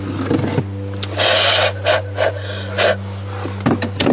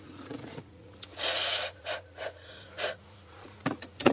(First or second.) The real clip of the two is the first